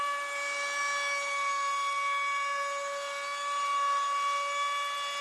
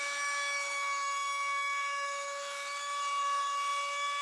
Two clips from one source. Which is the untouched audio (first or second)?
first